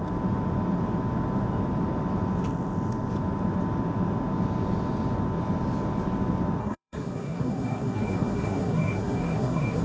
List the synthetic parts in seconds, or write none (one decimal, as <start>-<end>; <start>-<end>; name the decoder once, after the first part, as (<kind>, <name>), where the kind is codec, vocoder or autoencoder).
6.6-9.8 (codec, SNAC)